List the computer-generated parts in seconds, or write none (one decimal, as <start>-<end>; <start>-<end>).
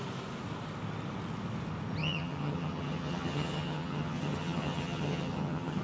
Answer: 2.0-5.8